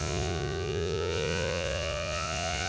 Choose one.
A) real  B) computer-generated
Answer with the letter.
B